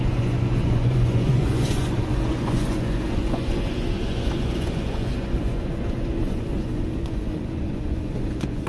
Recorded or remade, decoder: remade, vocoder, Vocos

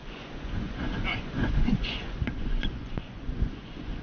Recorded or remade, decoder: remade, vocoder, Vocos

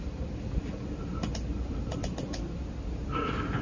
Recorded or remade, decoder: recorded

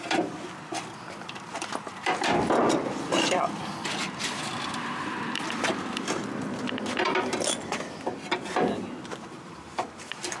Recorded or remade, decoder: remade, vocoder, BigVGAN v2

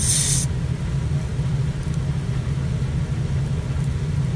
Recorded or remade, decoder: recorded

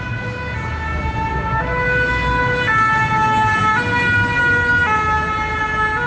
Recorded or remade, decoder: recorded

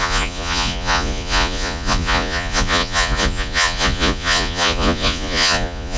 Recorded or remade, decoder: remade, vocoder, Vocos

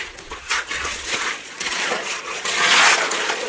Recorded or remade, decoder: remade, vocoder, Vocos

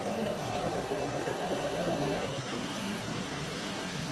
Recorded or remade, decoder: remade, codec, SNAC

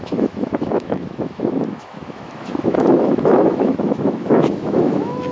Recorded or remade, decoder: remade, autoencoder, DAC-VAE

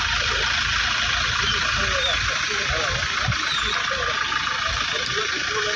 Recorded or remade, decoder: recorded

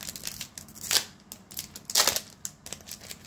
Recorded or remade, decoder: recorded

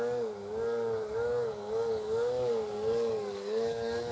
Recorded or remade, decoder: remade, codec, DAC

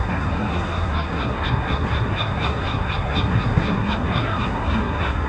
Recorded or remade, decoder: remade, codec, SNAC